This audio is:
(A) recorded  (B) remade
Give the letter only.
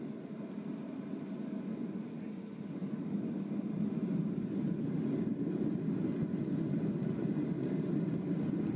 A